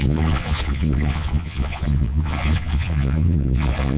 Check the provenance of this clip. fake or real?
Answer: fake